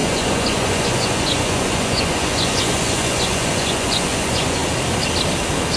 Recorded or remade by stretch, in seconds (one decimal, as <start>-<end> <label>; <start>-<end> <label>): 0.0-4.6 remade; 4.6-5.8 recorded